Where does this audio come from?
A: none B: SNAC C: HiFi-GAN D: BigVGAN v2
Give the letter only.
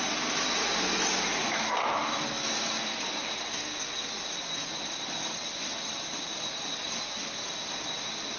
A